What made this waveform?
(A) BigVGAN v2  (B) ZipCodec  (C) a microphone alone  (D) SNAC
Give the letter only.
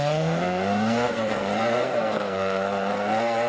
D